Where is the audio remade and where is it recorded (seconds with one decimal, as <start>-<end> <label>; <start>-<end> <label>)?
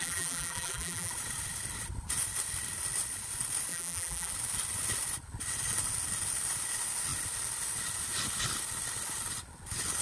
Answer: 0.0-1.1 remade; 1.1-3.7 recorded; 3.7-4.3 remade; 4.3-10.0 recorded